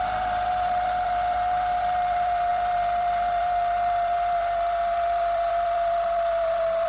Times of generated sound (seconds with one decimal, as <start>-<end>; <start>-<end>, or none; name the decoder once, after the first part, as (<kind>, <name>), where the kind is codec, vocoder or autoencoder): 0.0-6.9 (vocoder, BigVGAN v2)